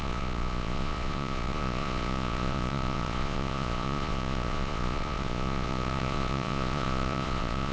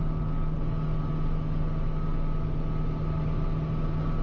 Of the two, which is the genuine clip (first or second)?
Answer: second